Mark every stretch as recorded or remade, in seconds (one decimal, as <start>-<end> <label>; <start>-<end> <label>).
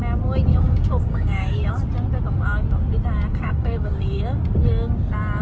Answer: 0.0-0.5 recorded; 0.5-1.7 remade; 1.7-3.3 recorded; 3.3-4.2 remade; 4.2-5.4 recorded